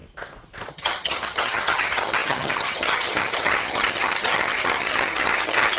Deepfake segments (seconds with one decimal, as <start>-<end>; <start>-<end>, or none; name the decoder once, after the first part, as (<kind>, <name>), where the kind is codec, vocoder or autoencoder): 0.7-5.8 (vocoder, HiFi-GAN)